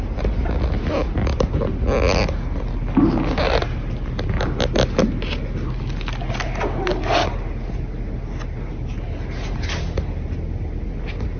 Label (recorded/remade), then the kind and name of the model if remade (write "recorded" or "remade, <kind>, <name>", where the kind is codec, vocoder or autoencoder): recorded